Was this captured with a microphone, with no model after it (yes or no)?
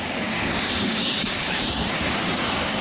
no